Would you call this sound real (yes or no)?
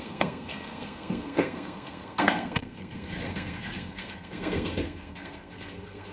no